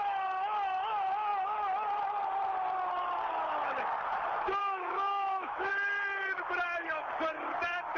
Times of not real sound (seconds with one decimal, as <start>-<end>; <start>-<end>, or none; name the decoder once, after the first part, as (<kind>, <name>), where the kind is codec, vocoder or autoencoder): 4.6-5.7 (autoencoder, DAC-VAE)